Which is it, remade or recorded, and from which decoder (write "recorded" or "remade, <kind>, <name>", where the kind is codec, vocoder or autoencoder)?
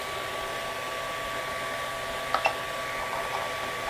recorded